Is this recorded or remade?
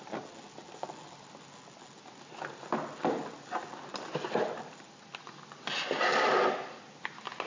recorded